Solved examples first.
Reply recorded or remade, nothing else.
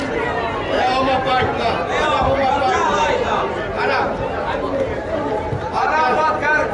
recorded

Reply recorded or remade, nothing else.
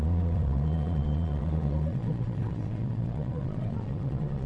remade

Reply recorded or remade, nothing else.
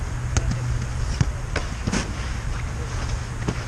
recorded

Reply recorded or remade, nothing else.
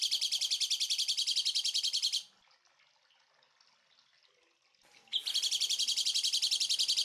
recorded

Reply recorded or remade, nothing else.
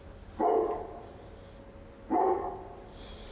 recorded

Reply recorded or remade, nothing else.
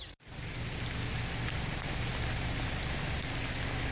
recorded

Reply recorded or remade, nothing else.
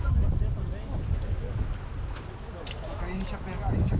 recorded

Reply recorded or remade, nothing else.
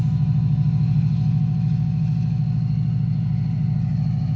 recorded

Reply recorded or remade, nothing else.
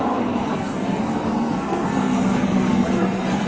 remade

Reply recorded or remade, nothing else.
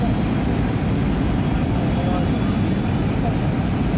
recorded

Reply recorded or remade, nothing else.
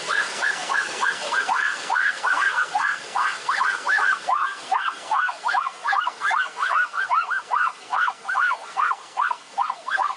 remade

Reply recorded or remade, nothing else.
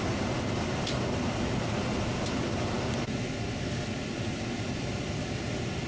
recorded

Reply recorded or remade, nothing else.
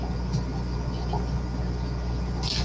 recorded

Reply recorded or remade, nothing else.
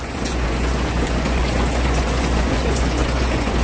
remade